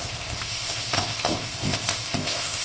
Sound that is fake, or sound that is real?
fake